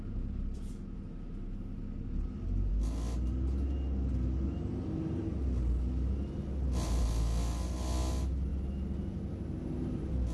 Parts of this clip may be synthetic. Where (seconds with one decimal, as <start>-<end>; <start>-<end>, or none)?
none